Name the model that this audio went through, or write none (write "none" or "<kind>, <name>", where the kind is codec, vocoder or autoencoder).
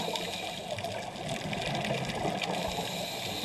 none